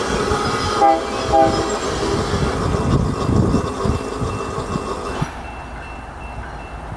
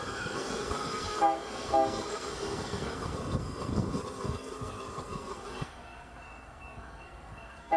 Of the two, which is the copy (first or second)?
second